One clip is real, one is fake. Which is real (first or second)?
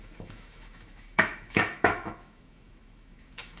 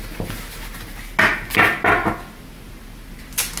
second